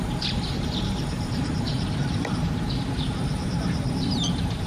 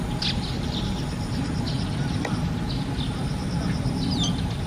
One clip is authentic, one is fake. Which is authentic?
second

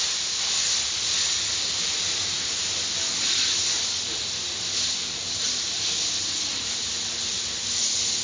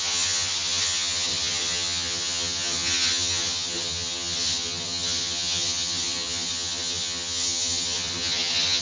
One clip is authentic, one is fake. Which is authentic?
first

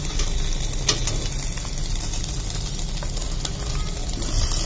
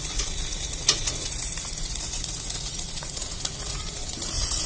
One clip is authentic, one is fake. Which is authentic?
first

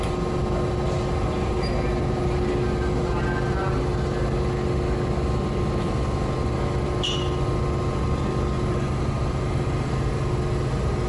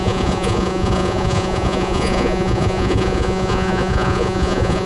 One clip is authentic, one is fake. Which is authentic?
first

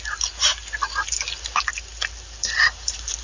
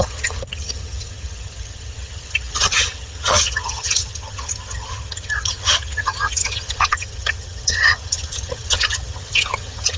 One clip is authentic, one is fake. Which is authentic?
first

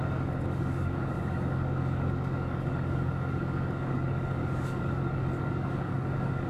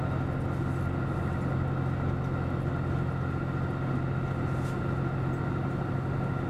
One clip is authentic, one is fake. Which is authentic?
second